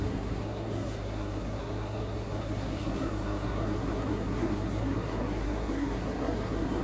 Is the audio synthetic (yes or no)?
yes